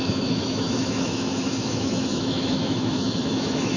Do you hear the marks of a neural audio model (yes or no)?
yes